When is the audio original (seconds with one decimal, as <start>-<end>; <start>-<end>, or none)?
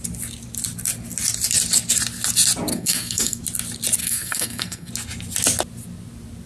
0.0-2.7; 3.4-4.0; 4.9-6.5